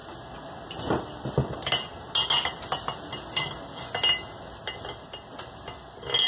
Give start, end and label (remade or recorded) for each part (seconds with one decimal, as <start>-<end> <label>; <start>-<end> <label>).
0.0-6.3 recorded